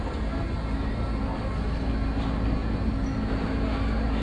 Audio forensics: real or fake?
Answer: real